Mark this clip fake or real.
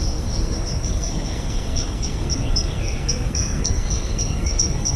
fake